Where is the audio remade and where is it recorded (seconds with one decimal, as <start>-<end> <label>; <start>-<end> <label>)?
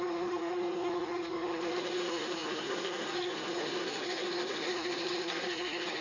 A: 0.0-6.0 remade